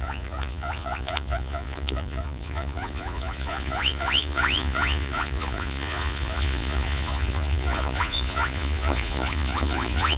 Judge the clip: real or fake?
fake